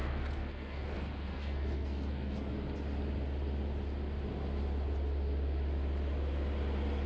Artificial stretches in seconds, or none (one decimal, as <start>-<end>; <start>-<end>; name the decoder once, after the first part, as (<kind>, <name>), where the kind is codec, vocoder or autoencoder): 0.0-2.5 (codec, SNAC)